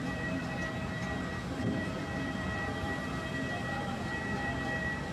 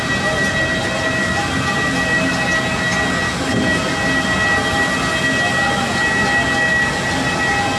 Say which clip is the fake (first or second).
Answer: first